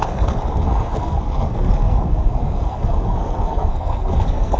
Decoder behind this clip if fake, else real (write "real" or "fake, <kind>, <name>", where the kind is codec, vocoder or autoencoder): fake, codec, SNAC